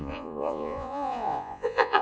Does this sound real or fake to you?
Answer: fake